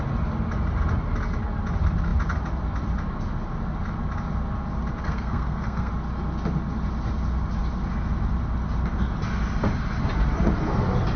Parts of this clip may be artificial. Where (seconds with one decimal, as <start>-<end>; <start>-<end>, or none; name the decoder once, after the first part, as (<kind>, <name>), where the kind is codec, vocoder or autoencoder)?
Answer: 5.0-5.9 (codec, SNAC)